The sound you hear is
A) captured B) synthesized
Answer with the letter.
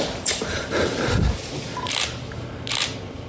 A